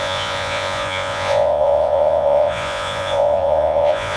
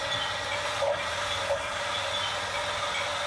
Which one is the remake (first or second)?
first